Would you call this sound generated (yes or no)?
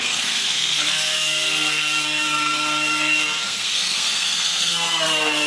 yes